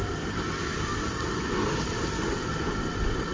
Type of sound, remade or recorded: recorded